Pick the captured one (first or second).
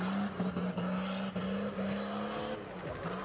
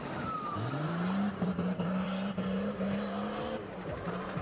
first